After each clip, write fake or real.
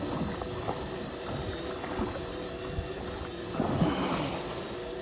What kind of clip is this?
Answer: real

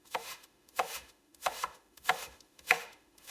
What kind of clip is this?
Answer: fake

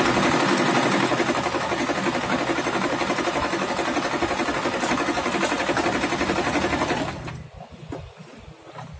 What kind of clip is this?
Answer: real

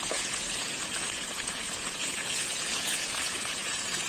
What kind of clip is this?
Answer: fake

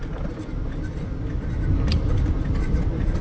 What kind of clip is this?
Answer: real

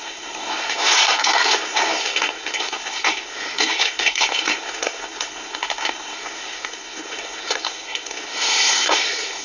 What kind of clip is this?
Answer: fake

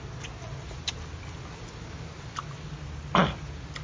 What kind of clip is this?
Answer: real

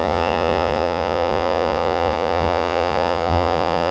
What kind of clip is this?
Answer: fake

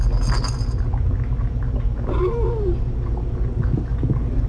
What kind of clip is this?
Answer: real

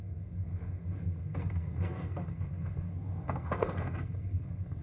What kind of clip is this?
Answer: fake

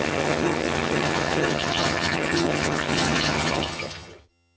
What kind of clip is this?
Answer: fake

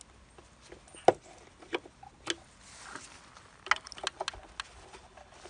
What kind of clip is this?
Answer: real